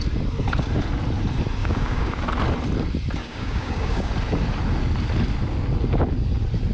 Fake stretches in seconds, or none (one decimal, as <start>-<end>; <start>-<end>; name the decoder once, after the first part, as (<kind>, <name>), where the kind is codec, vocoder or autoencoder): 1.6-2.1 (codec, DAC); 3.2-4.1